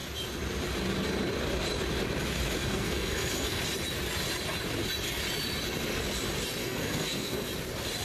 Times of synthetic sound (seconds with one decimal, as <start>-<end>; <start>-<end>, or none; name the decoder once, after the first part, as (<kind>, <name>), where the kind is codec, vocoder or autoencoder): 2.6-3.6 (codec, SNAC); 6.6-7.5